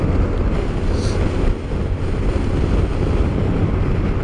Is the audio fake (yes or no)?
no